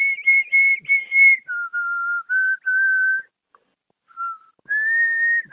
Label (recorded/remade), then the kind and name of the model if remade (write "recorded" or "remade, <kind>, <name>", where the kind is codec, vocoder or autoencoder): recorded